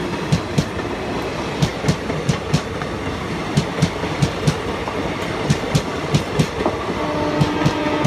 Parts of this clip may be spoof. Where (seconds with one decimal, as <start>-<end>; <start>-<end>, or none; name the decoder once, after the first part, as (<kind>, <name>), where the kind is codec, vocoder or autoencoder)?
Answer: none